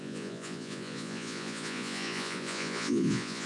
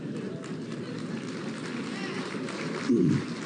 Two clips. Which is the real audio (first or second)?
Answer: second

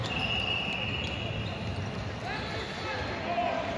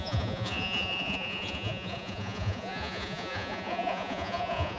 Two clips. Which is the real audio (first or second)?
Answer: first